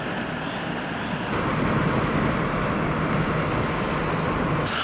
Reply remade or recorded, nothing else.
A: recorded